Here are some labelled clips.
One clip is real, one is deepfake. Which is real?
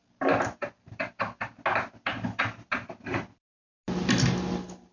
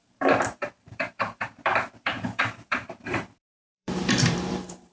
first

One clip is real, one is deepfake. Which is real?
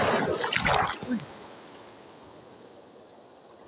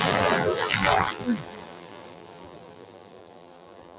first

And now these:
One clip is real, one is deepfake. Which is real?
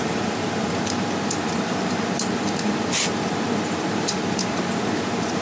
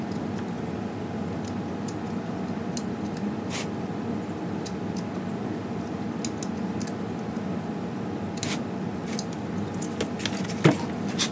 second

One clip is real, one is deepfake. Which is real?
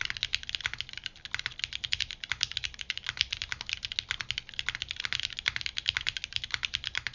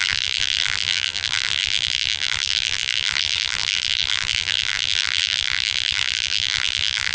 first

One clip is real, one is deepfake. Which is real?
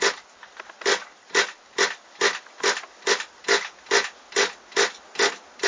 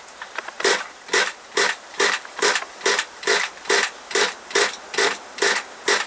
first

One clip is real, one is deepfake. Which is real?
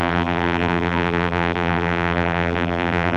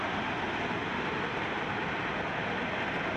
second